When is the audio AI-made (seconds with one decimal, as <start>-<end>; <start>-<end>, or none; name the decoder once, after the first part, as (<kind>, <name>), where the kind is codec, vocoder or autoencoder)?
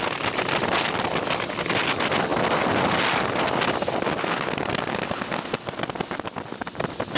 none